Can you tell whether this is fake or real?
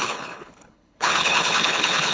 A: fake